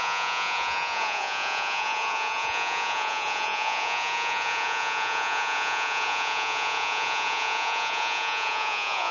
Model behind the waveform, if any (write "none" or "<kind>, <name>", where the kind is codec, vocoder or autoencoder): vocoder, Vocos